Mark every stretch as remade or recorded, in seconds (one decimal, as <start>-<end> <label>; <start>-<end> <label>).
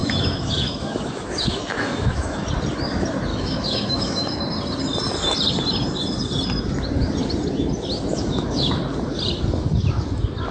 0.0-2.5 remade; 2.5-3.3 recorded; 3.3-4.4 remade; 4.4-8.1 recorded; 8.1-8.8 remade; 8.8-10.5 recorded